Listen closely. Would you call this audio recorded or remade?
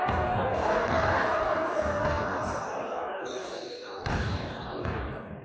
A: remade